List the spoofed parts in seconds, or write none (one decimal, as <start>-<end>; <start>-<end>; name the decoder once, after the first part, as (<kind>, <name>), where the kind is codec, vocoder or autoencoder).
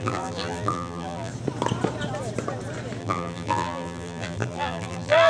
0.0-1.3 (vocoder, BigVGAN v2); 3.0-5.3